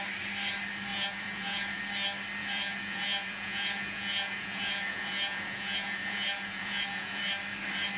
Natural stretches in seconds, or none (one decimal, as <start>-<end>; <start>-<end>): 0.0-0.9; 1.8-2.4; 7.2-8.0